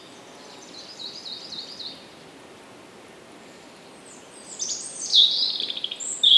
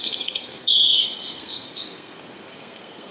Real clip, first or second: first